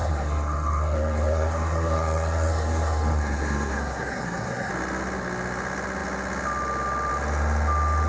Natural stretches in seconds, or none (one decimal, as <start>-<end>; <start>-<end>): 4.7-8.1